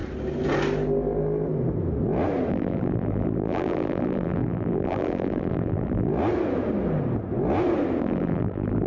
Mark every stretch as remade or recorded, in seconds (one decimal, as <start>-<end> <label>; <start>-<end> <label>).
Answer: 0.0-2.5 recorded; 2.5-6.1 remade; 6.1-8.0 recorded; 8.0-8.9 remade